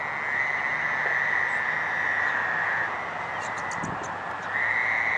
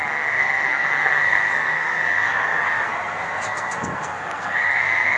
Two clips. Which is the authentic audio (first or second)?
first